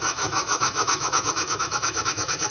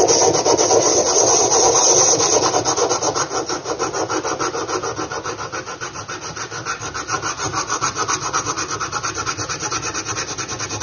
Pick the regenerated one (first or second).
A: first